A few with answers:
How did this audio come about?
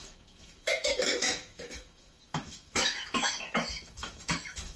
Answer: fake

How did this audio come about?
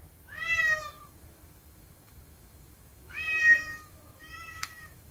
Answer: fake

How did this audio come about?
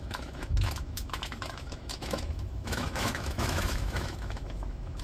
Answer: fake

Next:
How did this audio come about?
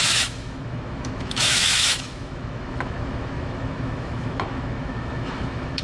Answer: fake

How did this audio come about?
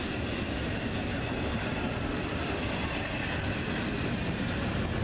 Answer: real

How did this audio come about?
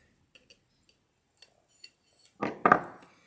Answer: real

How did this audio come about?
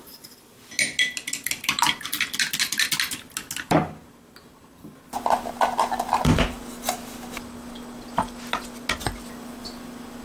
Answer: real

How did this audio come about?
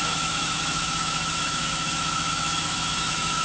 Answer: fake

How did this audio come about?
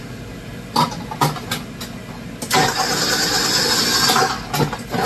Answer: real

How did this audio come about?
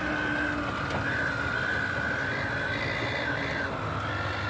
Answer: real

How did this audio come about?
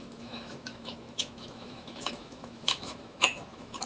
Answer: fake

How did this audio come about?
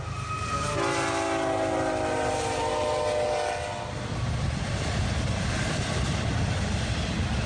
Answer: real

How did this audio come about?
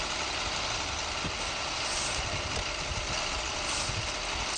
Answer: real